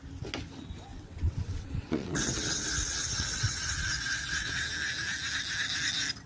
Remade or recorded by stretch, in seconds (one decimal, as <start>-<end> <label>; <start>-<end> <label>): 0.0-0.9 recorded; 0.9-4.5 remade; 4.5-6.3 recorded